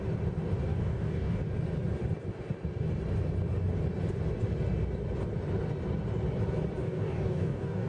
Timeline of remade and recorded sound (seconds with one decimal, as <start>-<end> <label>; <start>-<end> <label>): 0.0-0.7 recorded; 0.7-1.4 remade; 1.4-6.8 recorded; 6.8-7.9 remade